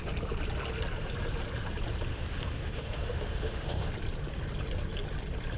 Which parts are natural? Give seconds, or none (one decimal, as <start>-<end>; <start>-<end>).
0.0-2.1; 3.9-5.6